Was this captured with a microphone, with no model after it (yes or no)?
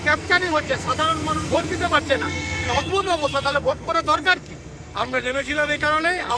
no